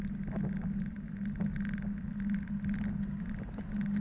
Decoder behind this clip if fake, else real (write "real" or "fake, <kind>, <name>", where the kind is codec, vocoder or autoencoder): real